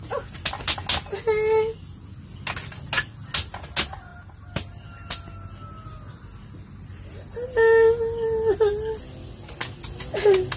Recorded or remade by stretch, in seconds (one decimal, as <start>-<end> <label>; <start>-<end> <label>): 0.0-10.6 recorded

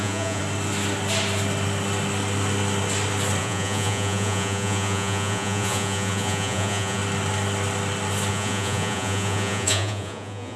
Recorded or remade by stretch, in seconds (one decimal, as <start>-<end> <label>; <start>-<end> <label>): 0.0-0.4 remade; 0.4-3.4 recorded; 3.4-7.0 remade; 7.0-8.3 recorded; 8.3-10.6 remade

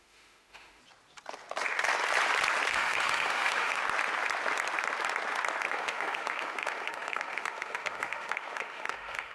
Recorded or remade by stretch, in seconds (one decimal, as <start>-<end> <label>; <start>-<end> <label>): 0.0-0.8 remade; 0.8-2.7 recorded; 2.7-3.8 remade; 3.8-5.7 recorded; 5.7-9.3 remade

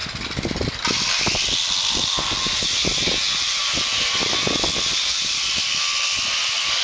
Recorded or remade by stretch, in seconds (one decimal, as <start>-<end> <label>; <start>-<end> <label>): 0.0-6.8 recorded

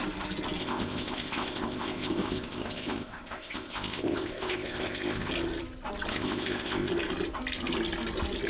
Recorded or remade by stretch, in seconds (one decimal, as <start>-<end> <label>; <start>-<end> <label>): 0.0-0.6 recorded; 0.6-5.3 remade; 5.3-6.1 recorded; 6.1-6.9 remade; 6.9-8.5 recorded

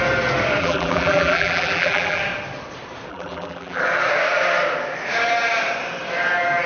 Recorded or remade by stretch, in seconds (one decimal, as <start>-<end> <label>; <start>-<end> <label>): 0.0-0.6 recorded; 0.6-2.2 remade; 2.2-3.1 recorded; 3.1-3.8 remade; 3.8-6.7 recorded